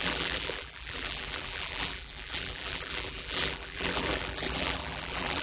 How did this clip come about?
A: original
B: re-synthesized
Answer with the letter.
B